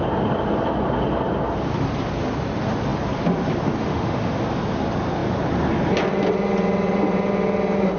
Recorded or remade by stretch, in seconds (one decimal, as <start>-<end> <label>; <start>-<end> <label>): 0.0-3.9 recorded; 3.9-4.4 remade; 4.4-8.0 recorded